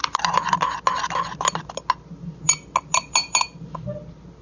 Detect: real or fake real